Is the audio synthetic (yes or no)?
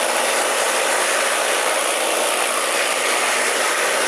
no